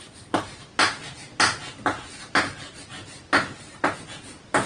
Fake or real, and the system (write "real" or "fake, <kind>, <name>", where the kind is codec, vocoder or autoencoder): real